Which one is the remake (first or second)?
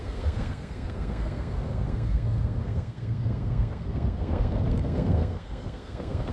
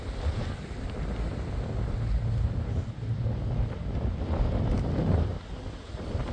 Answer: first